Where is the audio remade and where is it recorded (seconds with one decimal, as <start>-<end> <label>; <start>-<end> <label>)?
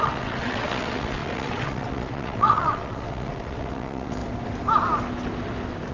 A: 0.0-4.2 remade; 4.2-5.9 recorded